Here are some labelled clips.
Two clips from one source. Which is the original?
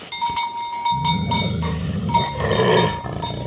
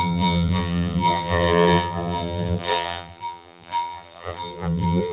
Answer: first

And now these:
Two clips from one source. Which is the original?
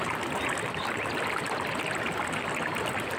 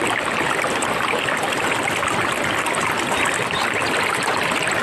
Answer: first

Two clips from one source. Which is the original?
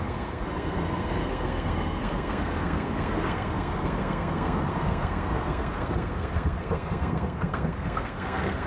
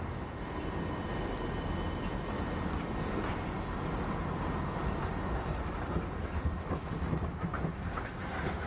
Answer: second